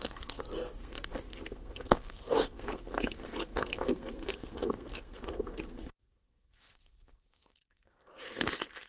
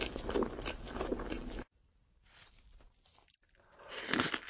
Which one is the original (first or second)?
second